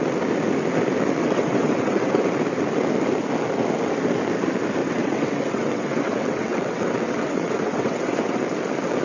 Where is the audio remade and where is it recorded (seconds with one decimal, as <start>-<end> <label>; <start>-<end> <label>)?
0.0-1.2 recorded; 1.2-2.4 remade; 2.4-4.8 recorded; 4.8-8.4 remade; 8.4-9.0 recorded